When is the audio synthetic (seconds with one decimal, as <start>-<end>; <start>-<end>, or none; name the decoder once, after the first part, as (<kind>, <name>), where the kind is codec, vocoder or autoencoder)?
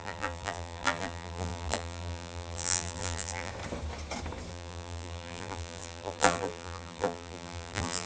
0.0-3.5 (vocoder, BigVGAN v2); 4.5-8.1